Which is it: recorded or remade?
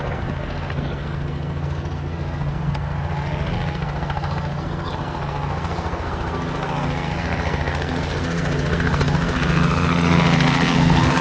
remade